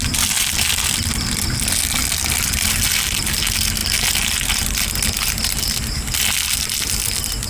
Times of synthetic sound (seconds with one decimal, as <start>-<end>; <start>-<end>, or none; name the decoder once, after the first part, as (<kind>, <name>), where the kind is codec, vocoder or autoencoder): none